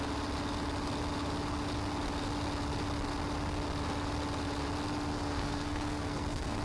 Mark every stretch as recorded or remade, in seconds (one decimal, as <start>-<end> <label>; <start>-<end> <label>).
0.0-5.1 recorded; 5.1-6.6 remade